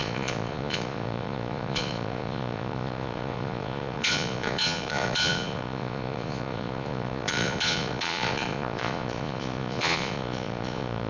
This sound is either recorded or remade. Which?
remade